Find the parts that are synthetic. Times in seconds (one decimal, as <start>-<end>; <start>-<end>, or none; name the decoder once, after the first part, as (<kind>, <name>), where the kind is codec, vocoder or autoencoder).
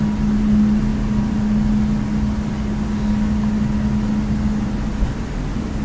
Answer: none